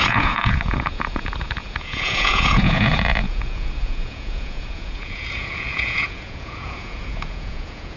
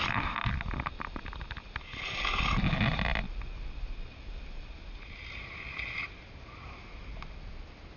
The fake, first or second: first